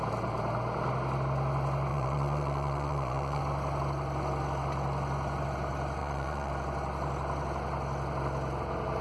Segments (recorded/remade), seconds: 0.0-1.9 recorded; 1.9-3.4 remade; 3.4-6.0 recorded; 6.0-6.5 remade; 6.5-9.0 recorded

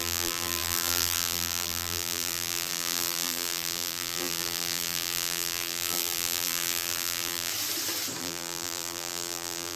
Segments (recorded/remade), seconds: 0.0-7.5 remade; 7.5-8.2 recorded; 8.2-9.8 remade

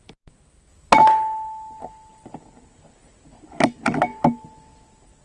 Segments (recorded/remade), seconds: 0.0-5.2 recorded

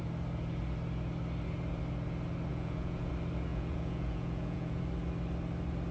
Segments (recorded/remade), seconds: 0.0-2.5 recorded; 2.5-3.1 remade; 3.1-3.5 recorded; 3.5-4.8 remade; 4.8-5.9 recorded

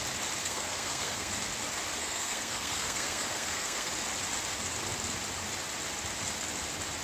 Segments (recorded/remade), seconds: 0.0-0.4 recorded; 0.4-1.3 remade; 1.3-2.0 recorded; 2.0-3.9 remade; 3.9-7.0 recorded

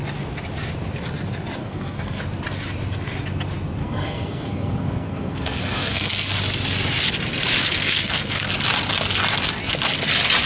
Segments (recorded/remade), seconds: 0.0-1.6 recorded; 1.6-2.2 remade; 2.2-3.8 recorded; 3.8-6.1 remade; 6.1-7.6 recorded; 7.6-8.5 remade; 8.5-10.5 recorded